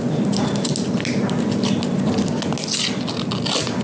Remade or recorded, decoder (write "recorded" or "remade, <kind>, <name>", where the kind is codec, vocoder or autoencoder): recorded